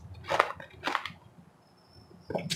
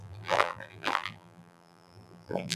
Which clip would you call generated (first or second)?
second